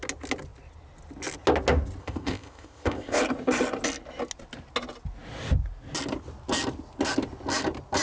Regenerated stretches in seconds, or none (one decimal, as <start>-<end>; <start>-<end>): 2.0-3.2